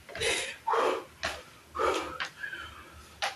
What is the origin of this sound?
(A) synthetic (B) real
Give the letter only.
B